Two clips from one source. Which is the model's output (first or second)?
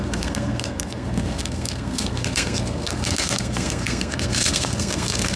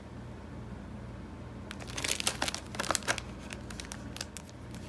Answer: first